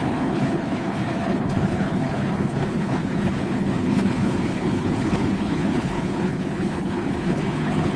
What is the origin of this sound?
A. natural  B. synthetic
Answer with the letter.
B